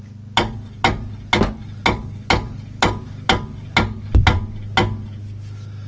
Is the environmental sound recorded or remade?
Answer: recorded